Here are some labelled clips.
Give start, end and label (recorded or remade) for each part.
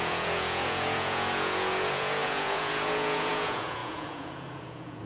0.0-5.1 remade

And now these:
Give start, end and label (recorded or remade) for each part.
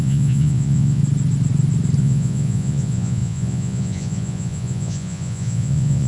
0.0-1.0 remade; 1.0-2.0 recorded; 2.0-6.1 remade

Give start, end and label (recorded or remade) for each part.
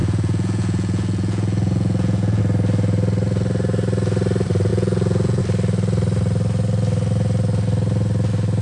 0.0-2.4 remade; 2.4-4.7 recorded; 4.7-5.4 remade; 5.4-8.6 recorded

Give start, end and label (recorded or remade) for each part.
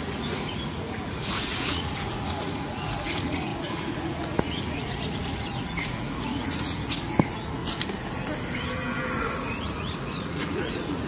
0.0-7.6 remade; 7.6-9.2 recorded; 9.2-11.1 remade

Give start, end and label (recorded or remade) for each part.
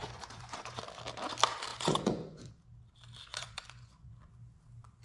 0.0-0.8 remade; 0.8-1.7 recorded; 1.7-2.5 remade; 2.5-3.3 recorded; 3.3-4.1 remade; 4.1-5.0 recorded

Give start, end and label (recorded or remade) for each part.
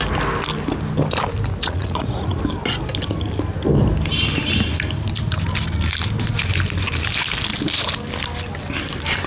0.0-1.6 recorded; 1.6-2.4 remade; 2.4-9.3 recorded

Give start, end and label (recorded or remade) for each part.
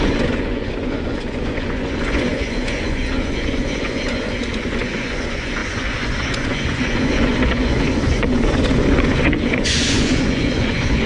0.0-11.1 remade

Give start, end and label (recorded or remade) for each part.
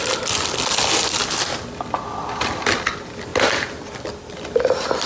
0.0-5.1 recorded